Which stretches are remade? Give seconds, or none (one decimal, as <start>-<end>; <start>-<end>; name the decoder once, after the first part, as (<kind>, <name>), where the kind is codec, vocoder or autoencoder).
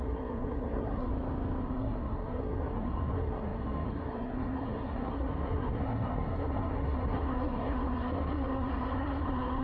0.0-1.1 (codec, SNAC); 1.6-9.6